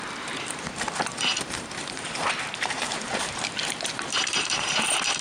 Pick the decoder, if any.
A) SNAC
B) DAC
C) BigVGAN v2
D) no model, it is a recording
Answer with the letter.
C